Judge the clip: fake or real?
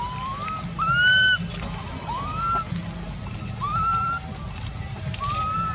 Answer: real